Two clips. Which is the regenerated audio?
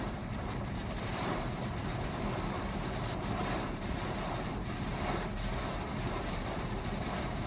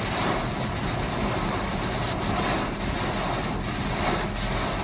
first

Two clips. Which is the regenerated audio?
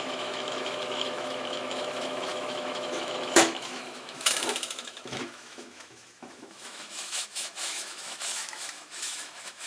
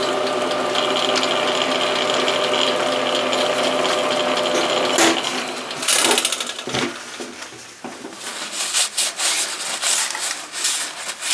first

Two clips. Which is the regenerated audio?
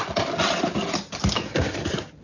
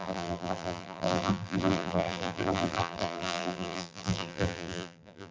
second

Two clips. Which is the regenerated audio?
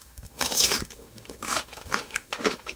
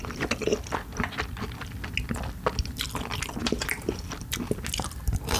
first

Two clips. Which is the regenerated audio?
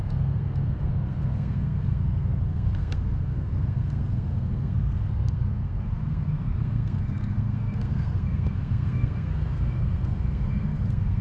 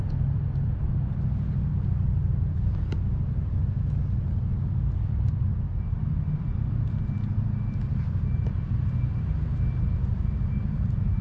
first